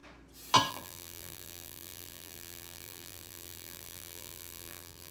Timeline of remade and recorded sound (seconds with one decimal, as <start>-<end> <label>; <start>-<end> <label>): 0.0-0.7 recorded; 0.7-5.1 remade